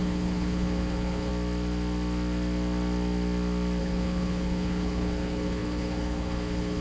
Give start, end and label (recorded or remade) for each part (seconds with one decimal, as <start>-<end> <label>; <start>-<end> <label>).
0.0-1.3 remade; 1.3-3.8 recorded; 3.8-6.8 remade